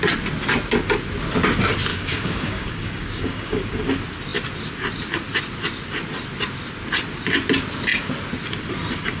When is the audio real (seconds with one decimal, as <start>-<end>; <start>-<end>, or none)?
0.0-1.9; 3.8-9.2